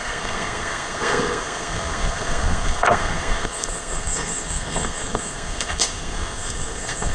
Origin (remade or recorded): remade